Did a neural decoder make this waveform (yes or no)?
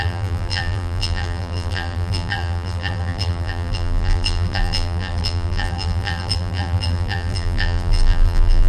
yes